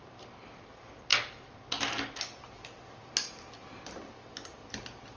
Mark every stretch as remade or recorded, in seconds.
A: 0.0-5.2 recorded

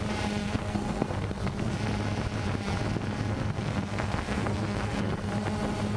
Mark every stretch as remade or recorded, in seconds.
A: 0.0-0.4 recorded; 0.4-1.8 remade; 1.8-3.3 recorded; 3.3-5.3 remade; 5.3-6.0 recorded